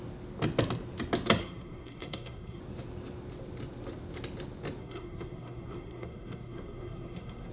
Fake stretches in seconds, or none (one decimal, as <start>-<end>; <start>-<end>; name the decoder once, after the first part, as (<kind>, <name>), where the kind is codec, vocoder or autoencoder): 1.4-2.6 (codec, SNAC); 4.8-7.5